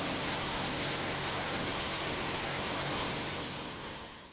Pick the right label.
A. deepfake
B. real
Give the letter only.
A